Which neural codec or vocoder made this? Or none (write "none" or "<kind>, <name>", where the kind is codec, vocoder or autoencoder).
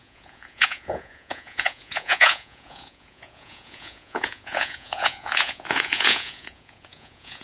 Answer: vocoder, Vocos